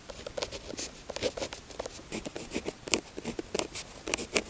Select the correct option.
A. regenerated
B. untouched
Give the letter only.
B